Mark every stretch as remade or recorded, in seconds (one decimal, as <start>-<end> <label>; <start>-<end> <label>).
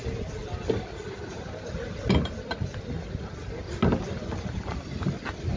0.0-5.6 recorded